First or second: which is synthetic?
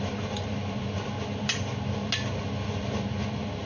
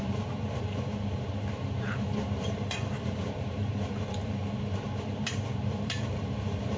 second